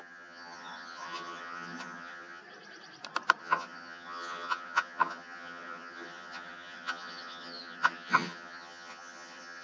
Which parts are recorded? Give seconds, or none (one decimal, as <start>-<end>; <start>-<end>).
2.4-3.4